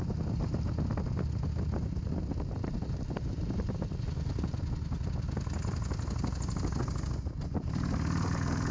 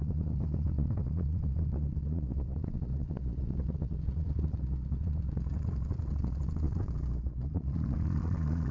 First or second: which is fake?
second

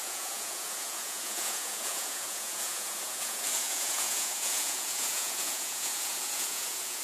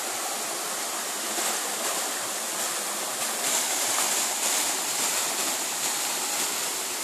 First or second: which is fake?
first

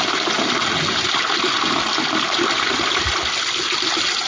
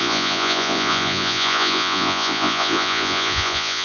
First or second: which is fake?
second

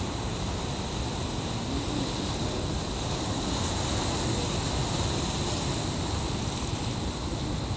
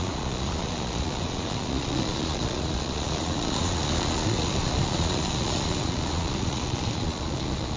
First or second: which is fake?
second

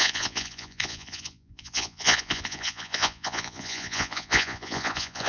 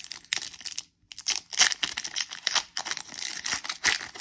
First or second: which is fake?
first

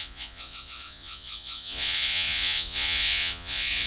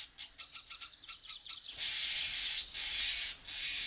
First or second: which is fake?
first